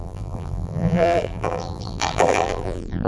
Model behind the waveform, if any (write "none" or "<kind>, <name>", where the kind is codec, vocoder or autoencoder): vocoder, BigVGAN v2